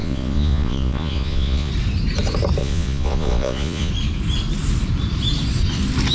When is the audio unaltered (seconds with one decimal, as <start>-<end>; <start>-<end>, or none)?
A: 1.7-2.6; 3.9-6.1